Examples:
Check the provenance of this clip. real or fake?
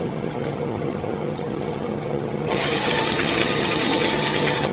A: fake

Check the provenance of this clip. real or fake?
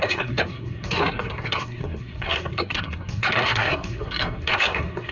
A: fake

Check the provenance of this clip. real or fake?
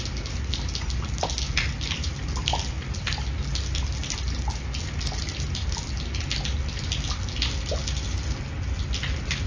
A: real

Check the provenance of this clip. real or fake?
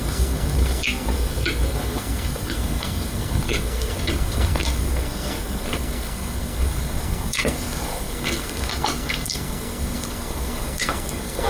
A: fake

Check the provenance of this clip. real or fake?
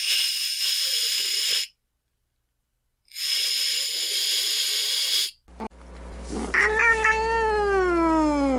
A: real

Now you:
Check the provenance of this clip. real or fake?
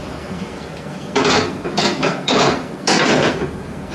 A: fake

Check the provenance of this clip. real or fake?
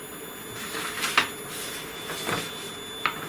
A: real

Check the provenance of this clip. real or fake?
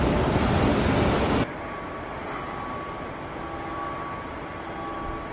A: real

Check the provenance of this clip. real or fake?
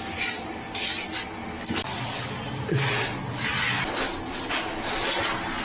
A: real